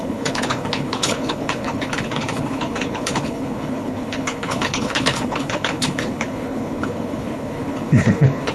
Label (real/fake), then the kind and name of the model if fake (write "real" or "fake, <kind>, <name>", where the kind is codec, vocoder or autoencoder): fake, codec, HILCodec